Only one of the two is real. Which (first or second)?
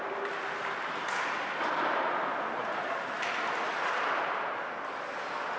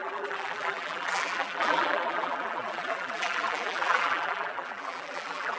first